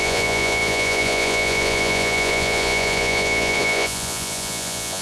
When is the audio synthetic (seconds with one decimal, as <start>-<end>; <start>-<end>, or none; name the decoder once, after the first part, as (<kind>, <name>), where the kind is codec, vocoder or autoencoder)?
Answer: 0.0-5.0 (vocoder, Vocos)